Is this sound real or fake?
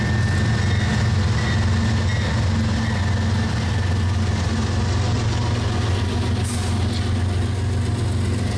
real